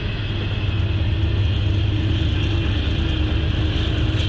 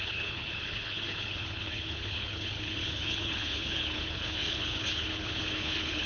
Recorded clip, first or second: first